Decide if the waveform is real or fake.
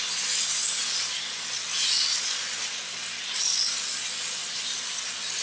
real